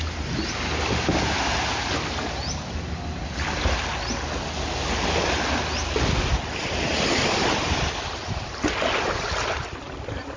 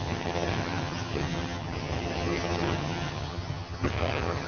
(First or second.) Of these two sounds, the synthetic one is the second